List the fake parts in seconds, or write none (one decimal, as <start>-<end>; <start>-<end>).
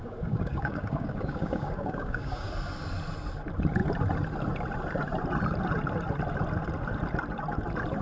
0.0-2.5